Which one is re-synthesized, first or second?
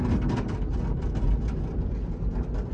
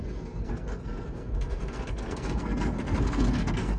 second